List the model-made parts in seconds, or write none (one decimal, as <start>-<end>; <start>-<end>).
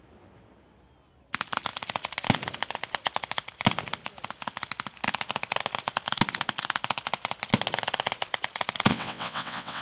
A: 8.9-9.8